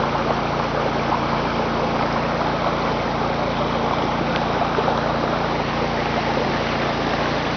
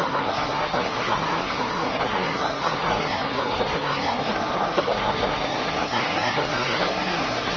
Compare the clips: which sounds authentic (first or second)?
first